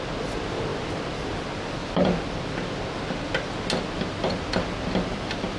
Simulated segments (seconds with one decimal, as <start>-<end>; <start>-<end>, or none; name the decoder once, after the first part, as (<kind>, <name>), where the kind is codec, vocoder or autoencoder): none